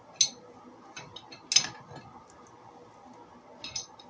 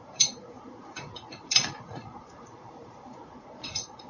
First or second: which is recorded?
first